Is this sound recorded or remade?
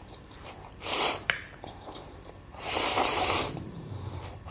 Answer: remade